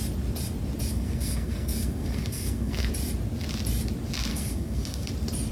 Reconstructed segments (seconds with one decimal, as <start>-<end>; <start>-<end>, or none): 0.9-2.9; 4.3-5.1